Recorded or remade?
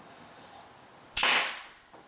recorded